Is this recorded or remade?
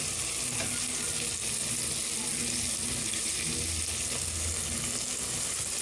recorded